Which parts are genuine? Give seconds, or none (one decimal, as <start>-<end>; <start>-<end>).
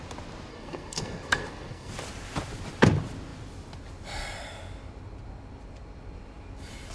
0.0-0.5; 1.9-6.9